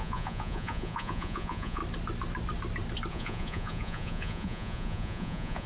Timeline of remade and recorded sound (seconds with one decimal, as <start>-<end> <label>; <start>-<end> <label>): 0.0-1.8 remade; 1.8-3.1 recorded; 3.1-5.7 remade